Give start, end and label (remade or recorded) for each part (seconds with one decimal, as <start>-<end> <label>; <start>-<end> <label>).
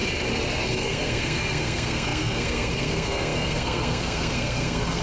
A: 0.0-0.7 recorded; 0.7-5.0 remade